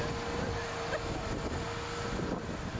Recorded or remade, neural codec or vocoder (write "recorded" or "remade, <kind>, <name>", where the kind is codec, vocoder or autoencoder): recorded